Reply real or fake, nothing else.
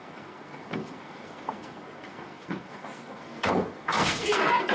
fake